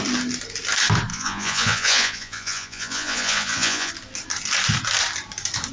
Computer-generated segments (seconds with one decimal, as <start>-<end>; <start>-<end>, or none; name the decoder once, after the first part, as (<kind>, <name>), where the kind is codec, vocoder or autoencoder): 1.1-3.9 (vocoder, Vocos)